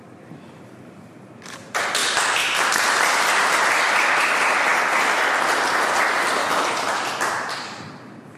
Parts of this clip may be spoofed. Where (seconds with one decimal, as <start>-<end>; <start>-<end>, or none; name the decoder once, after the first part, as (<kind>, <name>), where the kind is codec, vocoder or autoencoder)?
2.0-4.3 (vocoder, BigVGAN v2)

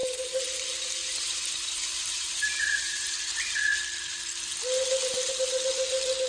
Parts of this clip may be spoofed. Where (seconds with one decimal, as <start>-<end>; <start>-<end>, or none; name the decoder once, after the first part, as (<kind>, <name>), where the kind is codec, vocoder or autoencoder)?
1.0-3.1 (vocoder, BigVGAN v2)

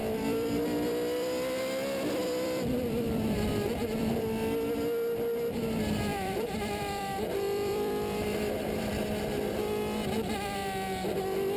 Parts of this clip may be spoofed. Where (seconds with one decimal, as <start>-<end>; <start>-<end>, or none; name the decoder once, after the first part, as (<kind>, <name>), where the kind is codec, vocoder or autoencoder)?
0.0-1.6 (vocoder, BigVGAN v2); 2.2-4.1; 6.1-9.2

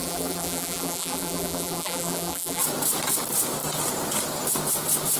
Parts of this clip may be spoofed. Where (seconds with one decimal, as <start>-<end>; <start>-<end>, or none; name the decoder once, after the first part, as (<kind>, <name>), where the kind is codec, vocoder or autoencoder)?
0.0-2.6 (vocoder, BigVGAN v2)

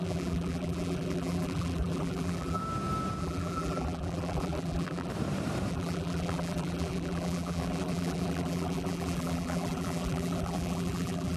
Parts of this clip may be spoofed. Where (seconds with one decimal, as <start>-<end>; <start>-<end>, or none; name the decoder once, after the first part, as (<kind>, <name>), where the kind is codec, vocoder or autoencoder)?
0.0-2.6 (vocoder, BigVGAN v2); 3.2-5.1; 5.7-11.4

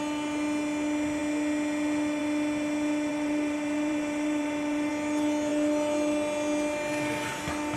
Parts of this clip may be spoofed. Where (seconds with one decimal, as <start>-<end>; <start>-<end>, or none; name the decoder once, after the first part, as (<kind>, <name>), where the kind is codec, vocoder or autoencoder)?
3.1-4.9 (vocoder, BigVGAN v2)

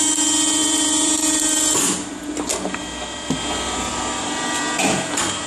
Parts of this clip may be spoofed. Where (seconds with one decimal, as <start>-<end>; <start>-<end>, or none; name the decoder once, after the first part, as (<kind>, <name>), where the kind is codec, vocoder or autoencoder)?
0.6-2.1 (vocoder, BigVGAN v2)